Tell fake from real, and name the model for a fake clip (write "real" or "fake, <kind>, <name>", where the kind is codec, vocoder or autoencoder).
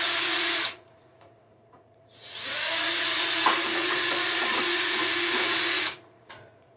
fake, vocoder, Vocos